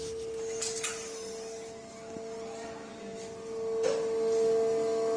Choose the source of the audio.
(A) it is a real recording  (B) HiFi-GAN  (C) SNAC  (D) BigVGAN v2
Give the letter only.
A